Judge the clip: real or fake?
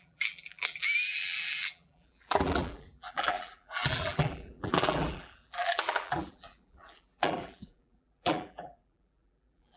fake